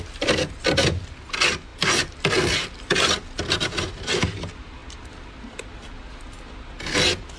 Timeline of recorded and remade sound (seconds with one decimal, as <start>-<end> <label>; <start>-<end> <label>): 0.0-4.8 remade; 4.8-5.6 recorded; 5.6-7.4 remade